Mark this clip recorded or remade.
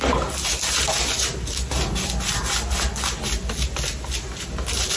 recorded